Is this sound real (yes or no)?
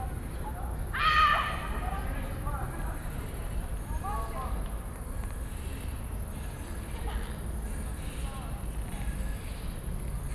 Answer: yes